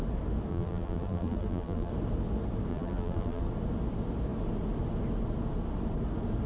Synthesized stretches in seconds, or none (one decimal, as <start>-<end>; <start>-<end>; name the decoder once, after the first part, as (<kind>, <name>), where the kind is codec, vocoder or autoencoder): 0.5-1.9 (vocoder, BigVGAN v2); 2.7-3.4